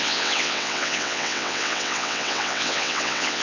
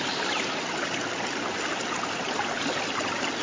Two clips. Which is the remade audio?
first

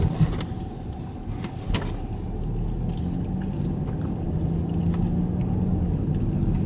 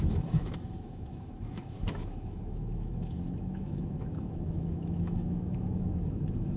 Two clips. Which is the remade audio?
second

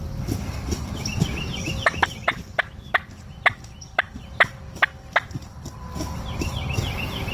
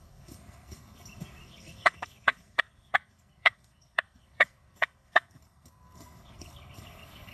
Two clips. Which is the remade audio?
second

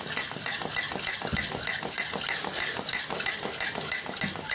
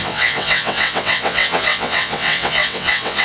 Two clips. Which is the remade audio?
second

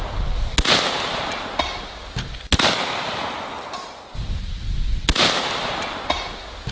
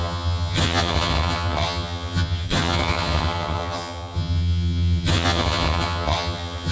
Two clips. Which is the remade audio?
second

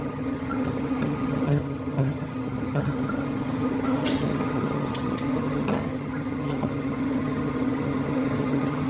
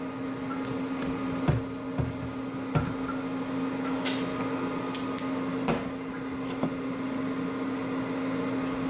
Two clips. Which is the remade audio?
first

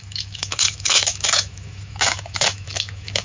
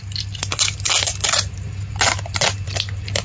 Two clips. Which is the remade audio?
first